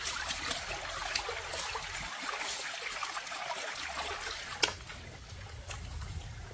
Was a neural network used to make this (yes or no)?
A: no